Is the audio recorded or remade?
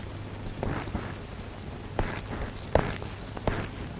recorded